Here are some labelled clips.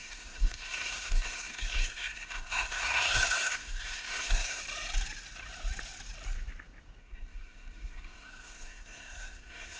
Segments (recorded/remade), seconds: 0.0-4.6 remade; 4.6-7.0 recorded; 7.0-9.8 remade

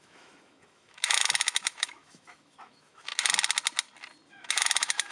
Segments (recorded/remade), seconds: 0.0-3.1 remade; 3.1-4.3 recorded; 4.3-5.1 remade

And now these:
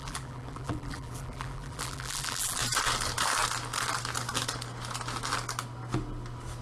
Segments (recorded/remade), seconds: 0.0-2.6 remade; 2.6-6.6 recorded

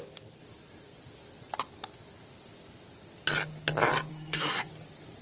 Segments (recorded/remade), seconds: 0.0-4.1 recorded; 4.1-4.7 remade; 4.7-5.2 recorded

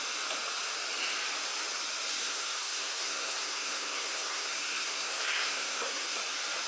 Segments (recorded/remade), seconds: 0.0-2.2 recorded; 2.2-6.2 remade; 6.2-6.7 recorded

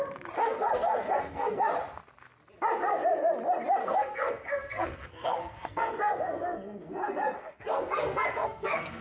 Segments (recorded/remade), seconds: 0.0-0.4 recorded; 0.4-1.7 remade; 1.7-3.8 recorded; 3.8-9.0 remade

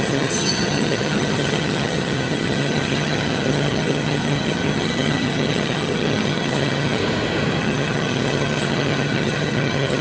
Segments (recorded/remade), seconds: 0.0-7.0 remade; 7.0-7.6 recorded; 7.6-10.0 remade

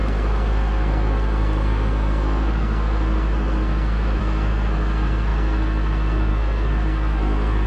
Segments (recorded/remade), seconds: 0.0-7.7 remade